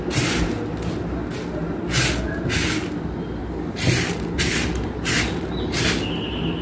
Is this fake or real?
real